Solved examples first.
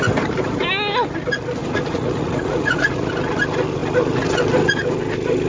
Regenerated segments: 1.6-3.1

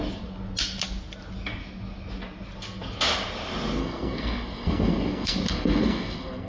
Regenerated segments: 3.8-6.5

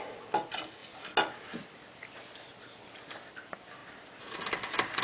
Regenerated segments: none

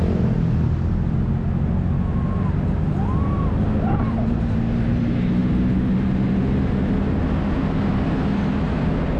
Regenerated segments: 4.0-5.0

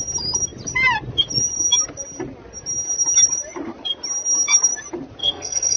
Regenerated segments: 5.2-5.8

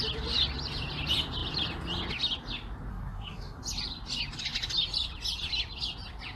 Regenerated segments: 2.9-3.6

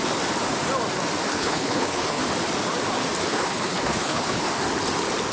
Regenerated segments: 1.3-2.2; 3.3-4.5

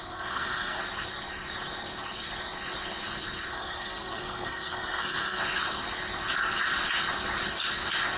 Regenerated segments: 0.0-0.8; 3.5-5.4